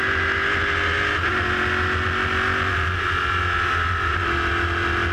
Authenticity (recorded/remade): recorded